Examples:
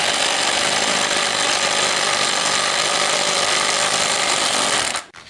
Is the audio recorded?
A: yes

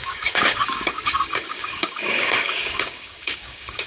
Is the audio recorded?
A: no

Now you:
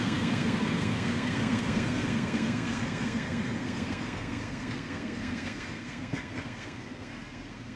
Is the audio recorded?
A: no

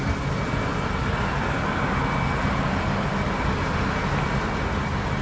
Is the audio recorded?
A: yes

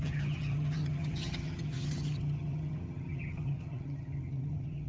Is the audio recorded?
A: no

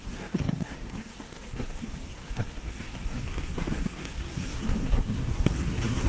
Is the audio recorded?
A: no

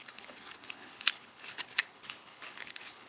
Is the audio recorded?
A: no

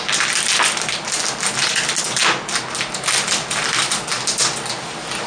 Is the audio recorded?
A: yes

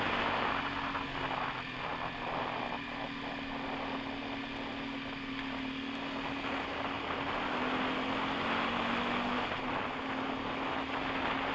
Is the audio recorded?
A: yes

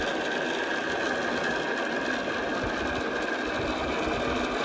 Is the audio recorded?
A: yes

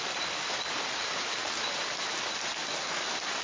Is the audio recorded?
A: no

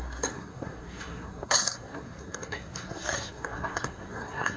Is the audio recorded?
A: no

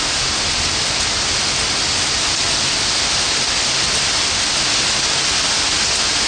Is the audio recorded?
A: yes